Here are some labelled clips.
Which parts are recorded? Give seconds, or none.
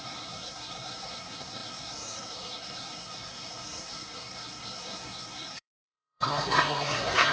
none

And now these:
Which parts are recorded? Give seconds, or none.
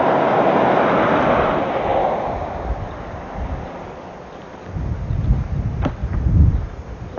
0.0-6.0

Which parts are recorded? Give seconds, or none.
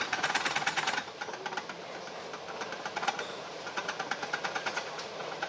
1.0-2.9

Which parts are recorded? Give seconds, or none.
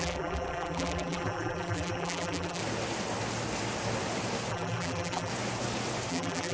2.6-4.5; 5.3-6.1